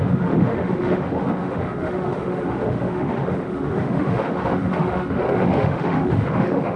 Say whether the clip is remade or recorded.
remade